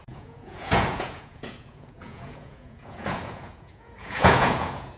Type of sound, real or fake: fake